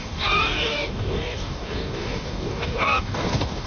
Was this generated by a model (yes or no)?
yes